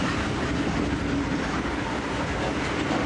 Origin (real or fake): real